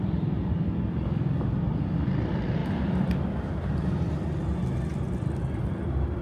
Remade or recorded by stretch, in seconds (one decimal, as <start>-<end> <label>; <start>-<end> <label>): 0.0-2.6 recorded; 2.6-3.9 remade; 3.9-6.2 recorded